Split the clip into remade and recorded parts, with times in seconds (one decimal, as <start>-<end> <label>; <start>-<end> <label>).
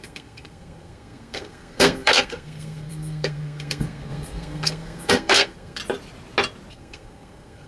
0.0-5.8 remade; 5.8-6.7 recorded; 6.7-7.7 remade